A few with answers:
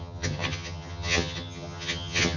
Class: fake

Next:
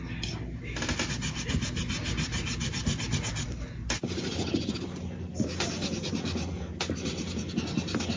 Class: real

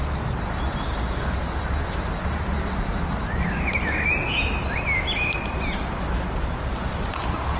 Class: real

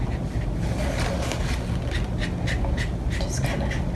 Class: real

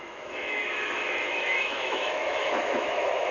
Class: fake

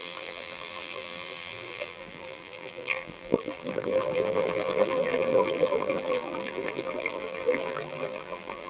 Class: fake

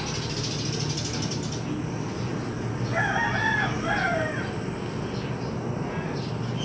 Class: real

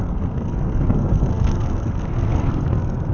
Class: fake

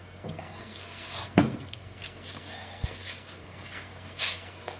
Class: fake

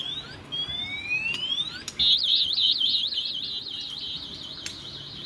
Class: real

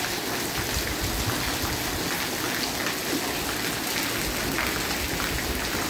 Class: real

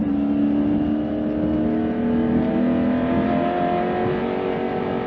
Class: real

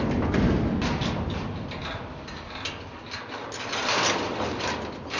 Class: real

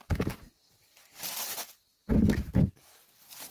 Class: real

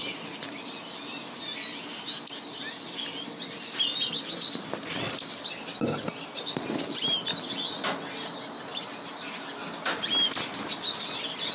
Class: real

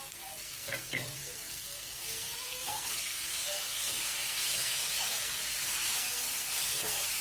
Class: fake